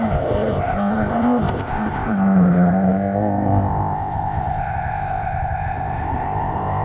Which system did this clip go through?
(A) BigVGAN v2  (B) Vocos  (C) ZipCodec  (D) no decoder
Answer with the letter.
C